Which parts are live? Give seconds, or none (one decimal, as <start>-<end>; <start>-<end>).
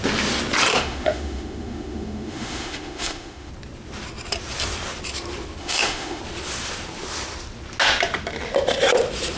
0.0-0.7; 3.5-5.6; 6.2-9.4